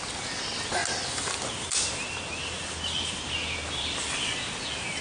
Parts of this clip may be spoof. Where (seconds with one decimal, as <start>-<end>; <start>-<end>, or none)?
none